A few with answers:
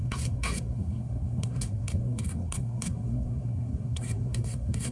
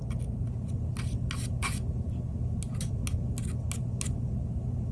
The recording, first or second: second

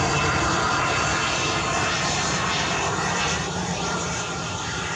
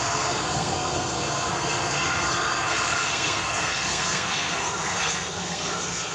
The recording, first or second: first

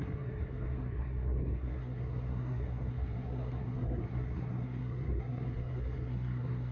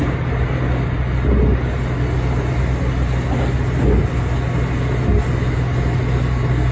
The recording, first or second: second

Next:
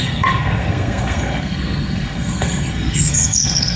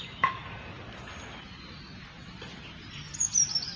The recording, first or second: second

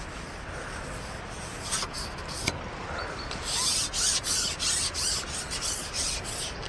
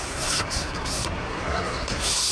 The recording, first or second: first